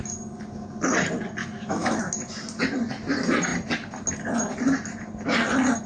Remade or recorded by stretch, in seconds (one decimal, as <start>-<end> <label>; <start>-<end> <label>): 0.0-1.4 recorded; 1.4-2.0 remade; 2.0-5.9 recorded